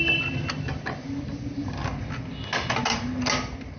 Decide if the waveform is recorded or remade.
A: recorded